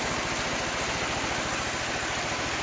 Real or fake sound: real